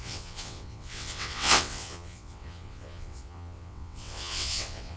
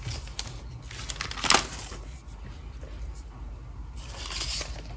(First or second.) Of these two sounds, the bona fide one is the second